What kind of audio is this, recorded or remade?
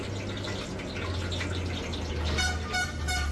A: recorded